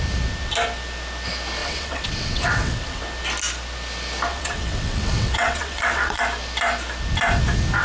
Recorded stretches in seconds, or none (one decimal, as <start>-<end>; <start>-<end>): 0.0-1.6; 3.0-4.3; 6.2-7.8